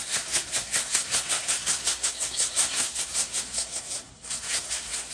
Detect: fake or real fake